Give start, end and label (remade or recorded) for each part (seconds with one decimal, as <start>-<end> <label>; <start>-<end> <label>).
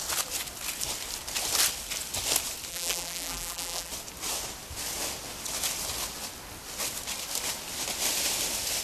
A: 0.0-2.7 recorded; 2.7-3.9 remade; 3.9-8.8 recorded